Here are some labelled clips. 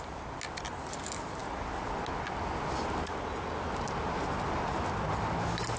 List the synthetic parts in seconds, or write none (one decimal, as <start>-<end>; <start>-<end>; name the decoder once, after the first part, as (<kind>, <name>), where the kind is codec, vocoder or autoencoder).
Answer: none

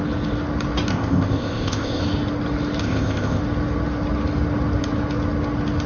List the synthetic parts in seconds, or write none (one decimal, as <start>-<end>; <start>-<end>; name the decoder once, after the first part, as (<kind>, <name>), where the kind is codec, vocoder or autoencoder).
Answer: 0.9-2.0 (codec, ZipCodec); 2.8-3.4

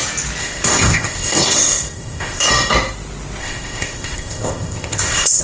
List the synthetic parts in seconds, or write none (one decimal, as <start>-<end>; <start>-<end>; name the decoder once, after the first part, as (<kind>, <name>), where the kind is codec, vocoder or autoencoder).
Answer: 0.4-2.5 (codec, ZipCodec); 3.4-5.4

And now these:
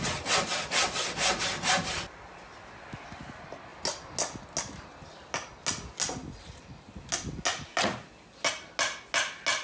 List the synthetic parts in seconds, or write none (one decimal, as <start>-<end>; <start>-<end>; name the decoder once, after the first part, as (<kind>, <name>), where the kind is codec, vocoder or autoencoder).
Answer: none

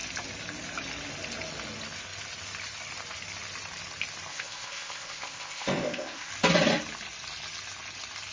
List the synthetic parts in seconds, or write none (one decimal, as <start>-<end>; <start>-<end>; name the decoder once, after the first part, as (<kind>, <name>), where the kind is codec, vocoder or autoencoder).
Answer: 4.3-6.3 (codec, ZipCodec)

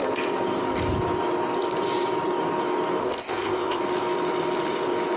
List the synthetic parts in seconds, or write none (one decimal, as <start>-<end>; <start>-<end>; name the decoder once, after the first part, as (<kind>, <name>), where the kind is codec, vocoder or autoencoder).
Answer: 3.0-3.8 (codec, ZipCodec)

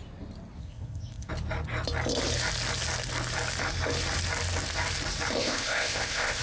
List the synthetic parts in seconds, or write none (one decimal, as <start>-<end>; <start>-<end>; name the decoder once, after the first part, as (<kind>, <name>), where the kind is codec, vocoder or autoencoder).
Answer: 0.6-1.3 (codec, ZipCodec); 5.4-6.4

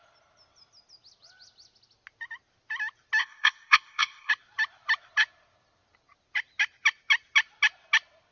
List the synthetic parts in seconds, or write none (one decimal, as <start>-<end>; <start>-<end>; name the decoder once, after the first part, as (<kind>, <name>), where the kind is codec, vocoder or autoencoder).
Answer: 3.2-4.3 (codec, ZipCodec)